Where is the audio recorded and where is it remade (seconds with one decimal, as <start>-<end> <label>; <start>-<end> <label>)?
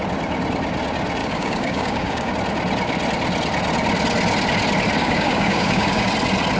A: 0.0-1.2 recorded; 1.2-2.3 remade; 2.3-5.0 recorded; 5.0-6.1 remade; 6.1-6.6 recorded